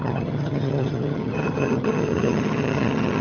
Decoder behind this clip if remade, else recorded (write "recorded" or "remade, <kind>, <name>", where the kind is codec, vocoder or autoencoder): remade, vocoder, HiFi-GAN